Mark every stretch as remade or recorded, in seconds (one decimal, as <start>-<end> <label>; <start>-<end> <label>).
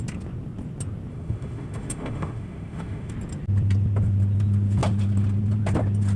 0.0-1.1 recorded; 1.1-3.1 remade; 3.1-6.2 recorded